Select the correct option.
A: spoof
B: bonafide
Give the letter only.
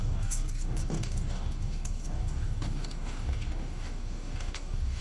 A